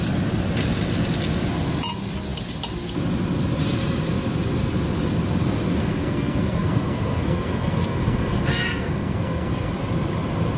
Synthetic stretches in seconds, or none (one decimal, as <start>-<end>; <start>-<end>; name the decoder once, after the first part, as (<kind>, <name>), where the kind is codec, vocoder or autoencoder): 5.8-9.7 (codec, SNAC)